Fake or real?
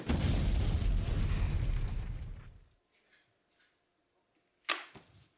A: real